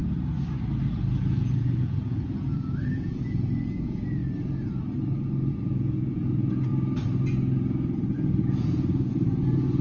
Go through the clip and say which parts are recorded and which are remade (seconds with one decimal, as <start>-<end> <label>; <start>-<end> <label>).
0.0-1.2 recorded; 1.2-4.2 remade; 4.2-5.5 recorded; 5.5-6.7 remade; 6.7-8.1 recorded; 8.1-9.8 remade